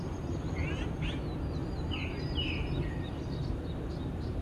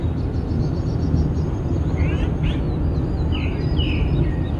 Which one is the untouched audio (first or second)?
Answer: second